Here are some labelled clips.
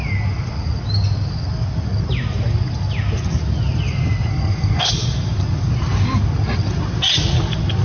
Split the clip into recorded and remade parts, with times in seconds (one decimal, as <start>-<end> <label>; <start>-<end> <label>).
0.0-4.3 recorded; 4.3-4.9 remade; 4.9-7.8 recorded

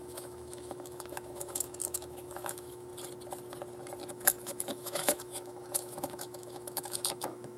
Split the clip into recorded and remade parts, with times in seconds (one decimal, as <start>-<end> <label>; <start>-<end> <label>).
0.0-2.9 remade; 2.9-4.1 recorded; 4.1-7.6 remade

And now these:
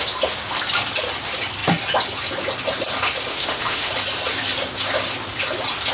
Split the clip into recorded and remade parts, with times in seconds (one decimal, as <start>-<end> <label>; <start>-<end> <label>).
0.0-3.3 recorded; 3.3-3.9 remade; 3.9-5.9 recorded

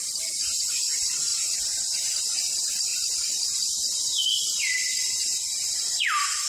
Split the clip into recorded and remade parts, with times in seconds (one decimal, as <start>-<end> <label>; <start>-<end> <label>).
0.0-6.5 remade

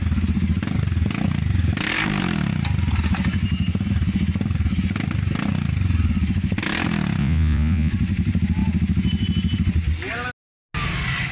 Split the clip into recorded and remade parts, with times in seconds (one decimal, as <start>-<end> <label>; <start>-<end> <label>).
0.0-7.2 recorded; 7.2-7.9 remade; 7.9-11.3 recorded

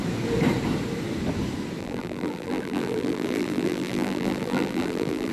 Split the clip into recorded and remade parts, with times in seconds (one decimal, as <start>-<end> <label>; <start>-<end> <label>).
0.0-1.8 recorded; 1.8-5.3 remade

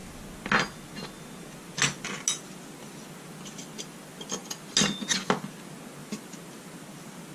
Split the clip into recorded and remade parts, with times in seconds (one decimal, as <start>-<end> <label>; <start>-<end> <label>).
0.0-6.0 recorded; 6.0-6.8 remade; 6.8-7.3 recorded